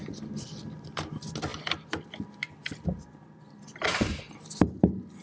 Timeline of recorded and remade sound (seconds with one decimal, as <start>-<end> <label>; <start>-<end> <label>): 0.0-5.2 recorded